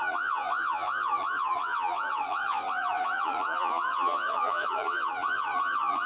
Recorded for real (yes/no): no